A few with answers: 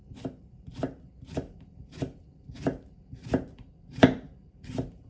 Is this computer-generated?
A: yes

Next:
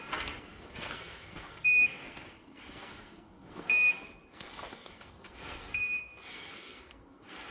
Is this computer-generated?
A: yes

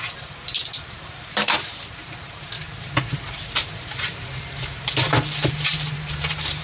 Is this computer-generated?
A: yes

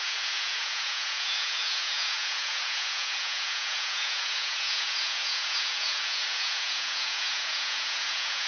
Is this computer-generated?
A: yes